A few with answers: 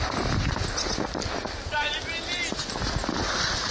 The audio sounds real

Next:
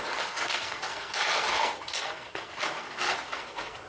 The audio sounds fake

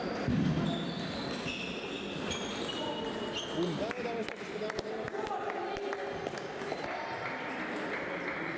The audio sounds real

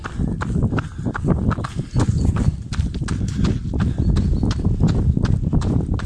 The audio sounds real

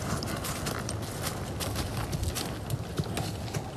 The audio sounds real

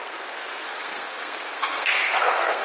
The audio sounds fake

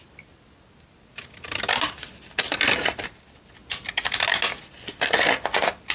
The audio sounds real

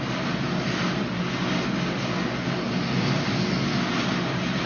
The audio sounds real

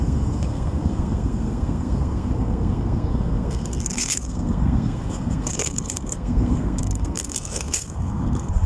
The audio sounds fake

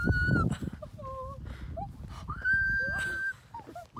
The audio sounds real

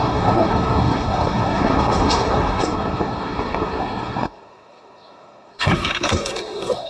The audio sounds fake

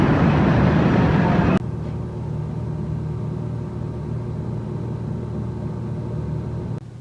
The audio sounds real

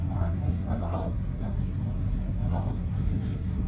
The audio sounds fake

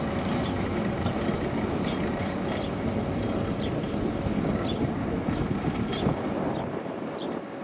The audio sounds real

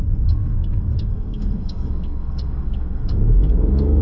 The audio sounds fake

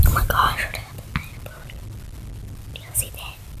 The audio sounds real